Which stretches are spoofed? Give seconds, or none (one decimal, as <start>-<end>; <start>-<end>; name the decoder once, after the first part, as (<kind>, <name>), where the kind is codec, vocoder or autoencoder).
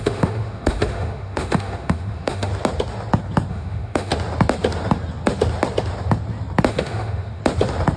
0.0-2.5 (autoencoder, DAC-VAE); 3.5-4.1; 6.7-7.4